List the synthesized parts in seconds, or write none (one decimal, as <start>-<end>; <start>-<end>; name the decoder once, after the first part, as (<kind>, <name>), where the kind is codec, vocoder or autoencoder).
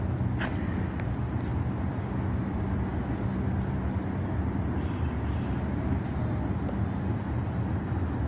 none